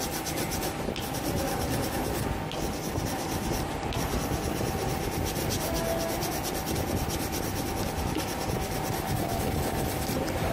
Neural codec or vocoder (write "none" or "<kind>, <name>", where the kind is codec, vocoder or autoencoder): none